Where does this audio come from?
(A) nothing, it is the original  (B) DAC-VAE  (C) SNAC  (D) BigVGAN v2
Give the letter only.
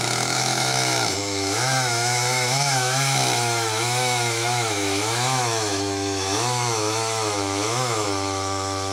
B